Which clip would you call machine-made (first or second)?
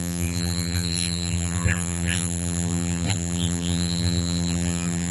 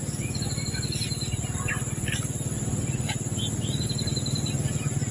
first